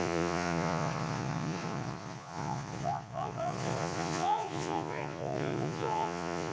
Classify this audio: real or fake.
fake